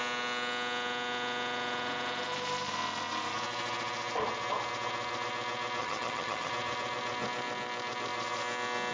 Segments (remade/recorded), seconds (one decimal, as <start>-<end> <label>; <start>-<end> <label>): 0.0-5.8 recorded; 5.8-6.5 remade; 6.5-8.9 recorded